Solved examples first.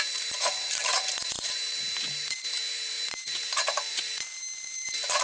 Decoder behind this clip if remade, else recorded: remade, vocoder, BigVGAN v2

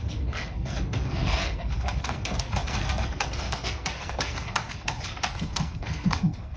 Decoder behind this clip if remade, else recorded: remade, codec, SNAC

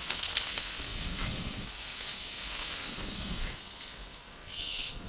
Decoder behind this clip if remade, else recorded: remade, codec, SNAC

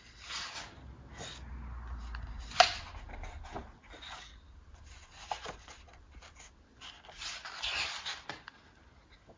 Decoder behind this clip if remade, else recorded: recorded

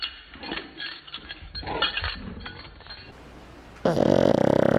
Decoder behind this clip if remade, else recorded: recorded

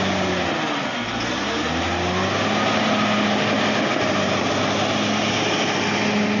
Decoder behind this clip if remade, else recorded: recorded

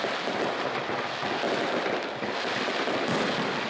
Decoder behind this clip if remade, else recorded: recorded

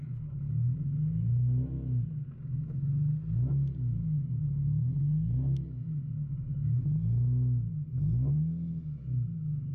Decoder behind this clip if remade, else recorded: recorded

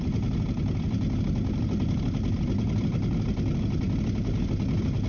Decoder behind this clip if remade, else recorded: recorded